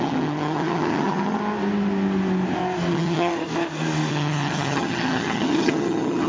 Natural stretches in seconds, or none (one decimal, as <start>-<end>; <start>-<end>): 1.4-2.9; 3.3-4.1